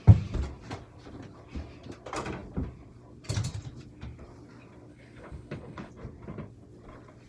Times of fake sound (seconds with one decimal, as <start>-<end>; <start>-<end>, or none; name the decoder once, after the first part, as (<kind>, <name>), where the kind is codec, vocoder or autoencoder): 4.9-5.9 (codec, HILCodec)